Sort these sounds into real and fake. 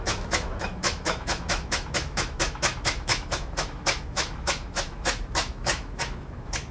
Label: fake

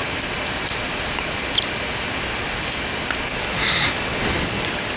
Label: real